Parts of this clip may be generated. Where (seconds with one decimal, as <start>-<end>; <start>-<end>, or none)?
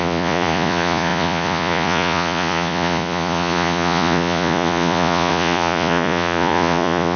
0.0-7.2